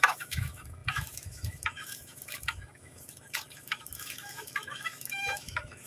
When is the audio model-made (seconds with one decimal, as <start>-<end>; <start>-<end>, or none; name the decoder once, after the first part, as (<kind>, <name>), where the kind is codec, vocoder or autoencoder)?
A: 0.0-5.9 (autoencoder, DAC-VAE)

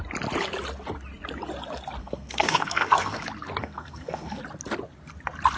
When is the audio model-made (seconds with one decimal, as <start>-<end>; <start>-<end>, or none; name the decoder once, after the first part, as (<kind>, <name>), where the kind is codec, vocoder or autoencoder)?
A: 2.0-3.2 (codec, SNAC); 3.6-4.4